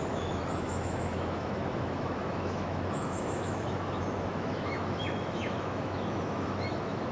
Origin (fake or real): fake